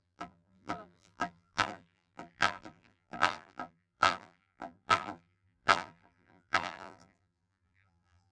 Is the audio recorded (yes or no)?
no